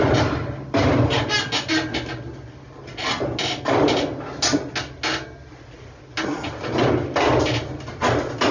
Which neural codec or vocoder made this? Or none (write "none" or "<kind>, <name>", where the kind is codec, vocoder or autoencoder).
none